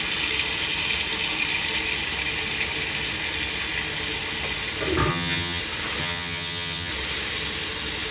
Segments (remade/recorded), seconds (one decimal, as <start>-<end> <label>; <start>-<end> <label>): 0.0-5.1 recorded; 5.1-5.6 remade; 5.6-6.0 recorded; 6.0-6.9 remade; 6.9-8.1 recorded

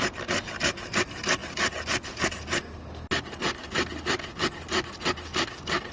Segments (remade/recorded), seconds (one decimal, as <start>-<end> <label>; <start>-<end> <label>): 0.0-5.9 recorded

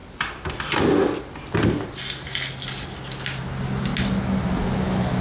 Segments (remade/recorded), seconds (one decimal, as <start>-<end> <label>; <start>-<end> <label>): 0.0-5.2 recorded

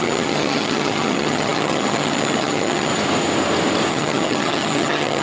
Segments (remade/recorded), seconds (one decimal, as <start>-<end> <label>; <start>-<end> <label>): 0.0-2.9 remade; 2.9-3.9 recorded; 3.9-5.2 remade

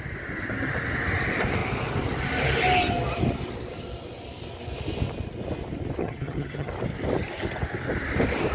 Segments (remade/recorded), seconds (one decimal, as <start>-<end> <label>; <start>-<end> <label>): 0.0-6.0 recorded; 6.0-6.7 remade; 6.7-8.5 recorded

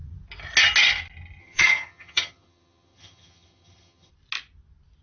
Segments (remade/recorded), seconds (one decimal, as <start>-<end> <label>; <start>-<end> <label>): 0.0-1.4 recorded; 1.4-4.1 remade; 4.1-5.0 recorded